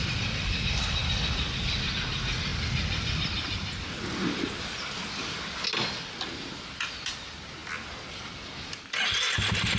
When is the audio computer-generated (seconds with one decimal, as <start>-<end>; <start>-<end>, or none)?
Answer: none